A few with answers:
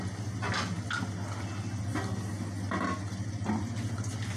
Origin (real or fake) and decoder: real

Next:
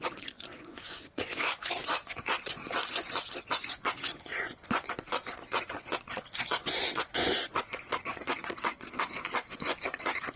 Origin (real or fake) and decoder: fake, vocoder, Vocos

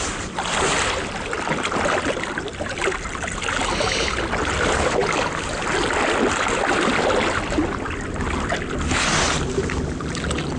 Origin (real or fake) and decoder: real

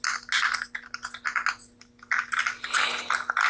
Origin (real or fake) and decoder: real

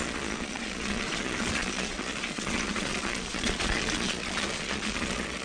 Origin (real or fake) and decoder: fake, vocoder, Vocos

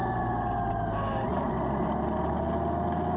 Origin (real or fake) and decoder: real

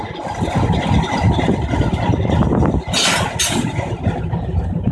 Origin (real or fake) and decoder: real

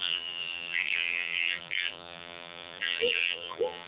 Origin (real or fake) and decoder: fake, vocoder, BigVGAN v2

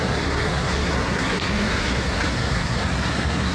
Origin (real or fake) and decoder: fake, codec, SNAC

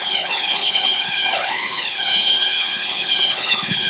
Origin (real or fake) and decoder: fake, codec, HILCodec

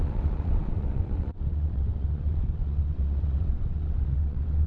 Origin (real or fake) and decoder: fake, vocoder, WaveNeXt